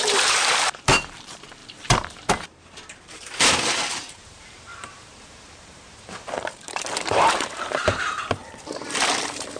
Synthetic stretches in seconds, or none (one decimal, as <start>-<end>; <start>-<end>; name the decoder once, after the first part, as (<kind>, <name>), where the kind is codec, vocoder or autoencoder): 0.0-9.6 (vocoder, BigVGAN v2)